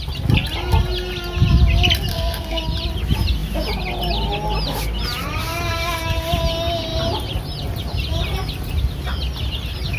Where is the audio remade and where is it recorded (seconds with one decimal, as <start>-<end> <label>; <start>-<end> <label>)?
0.0-2.1 recorded; 2.1-2.6 remade; 2.6-10.0 recorded